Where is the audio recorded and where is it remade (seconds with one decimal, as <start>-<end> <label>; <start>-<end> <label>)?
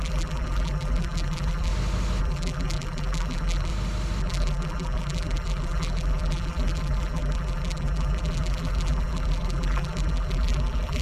0.0-1.7 remade; 1.7-2.2 recorded; 2.2-3.7 remade; 3.7-4.2 recorded; 4.2-11.0 remade